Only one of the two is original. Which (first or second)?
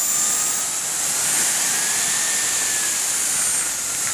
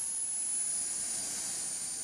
first